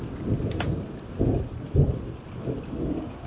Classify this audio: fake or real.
real